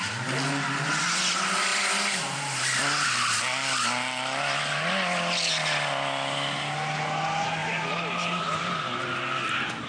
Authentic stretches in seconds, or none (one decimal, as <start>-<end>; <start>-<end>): 0.0-7.6